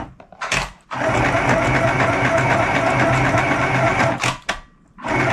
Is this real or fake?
real